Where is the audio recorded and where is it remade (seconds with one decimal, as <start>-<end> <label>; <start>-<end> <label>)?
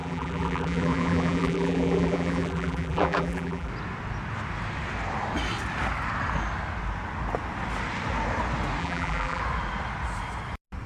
0.0-3.7 remade; 3.7-8.8 recorded; 8.8-9.4 remade; 9.4-10.9 recorded